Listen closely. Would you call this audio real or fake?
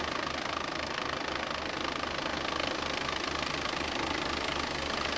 real